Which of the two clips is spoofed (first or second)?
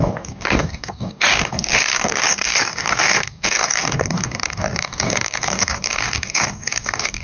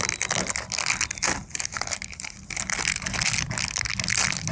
first